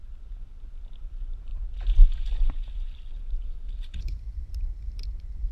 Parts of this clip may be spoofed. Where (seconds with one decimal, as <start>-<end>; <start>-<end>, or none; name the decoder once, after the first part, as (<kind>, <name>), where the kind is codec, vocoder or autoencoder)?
0.0-0.7 (vocoder, BigVGAN v2); 1.5-4.8

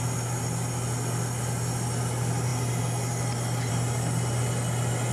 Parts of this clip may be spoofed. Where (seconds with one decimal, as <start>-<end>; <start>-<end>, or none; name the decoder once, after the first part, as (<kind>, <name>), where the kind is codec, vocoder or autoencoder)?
none

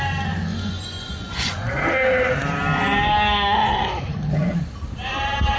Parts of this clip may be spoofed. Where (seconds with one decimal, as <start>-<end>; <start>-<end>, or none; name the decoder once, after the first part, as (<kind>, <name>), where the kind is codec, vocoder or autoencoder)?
0.5-1.7 (vocoder, Vocos)

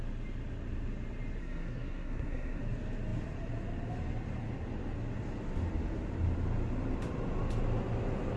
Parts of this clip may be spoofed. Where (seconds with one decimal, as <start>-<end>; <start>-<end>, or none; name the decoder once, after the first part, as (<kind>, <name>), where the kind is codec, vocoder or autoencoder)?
1.4-2.6 (codec, SNAC)

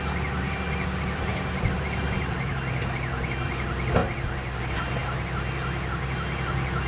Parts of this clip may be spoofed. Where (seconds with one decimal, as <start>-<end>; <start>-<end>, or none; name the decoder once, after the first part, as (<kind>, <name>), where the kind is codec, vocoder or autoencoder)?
none

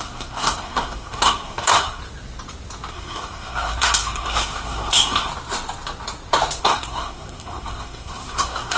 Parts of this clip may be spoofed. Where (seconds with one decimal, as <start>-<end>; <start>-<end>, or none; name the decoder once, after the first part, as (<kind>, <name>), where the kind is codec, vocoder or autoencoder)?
0.0-2.0 (codec, SNAC); 2.9-5.3; 6.6-8.8

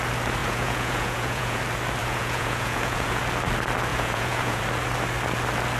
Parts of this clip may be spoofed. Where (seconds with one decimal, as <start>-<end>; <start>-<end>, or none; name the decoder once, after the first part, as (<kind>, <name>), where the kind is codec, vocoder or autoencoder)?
0.4-1.6 (vocoder, Vocos); 2.0-3.2; 3.9-4.6

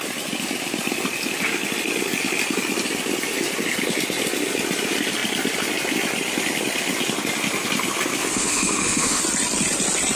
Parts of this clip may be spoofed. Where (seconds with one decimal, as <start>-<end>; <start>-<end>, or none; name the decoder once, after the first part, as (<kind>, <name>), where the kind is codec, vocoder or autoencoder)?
8.2-9.2 (autoencoder, DAC-VAE)